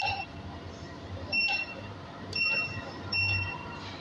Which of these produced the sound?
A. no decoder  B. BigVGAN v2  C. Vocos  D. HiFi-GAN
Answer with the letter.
B